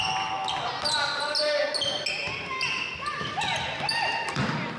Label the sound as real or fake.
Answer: real